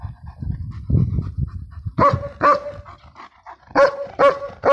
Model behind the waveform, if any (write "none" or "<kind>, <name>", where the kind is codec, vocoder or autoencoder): none